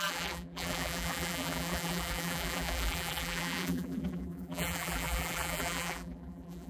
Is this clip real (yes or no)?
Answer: no